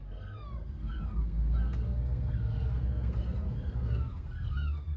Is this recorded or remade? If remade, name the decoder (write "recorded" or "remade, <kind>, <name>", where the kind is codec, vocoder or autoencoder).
remade, codec, SNAC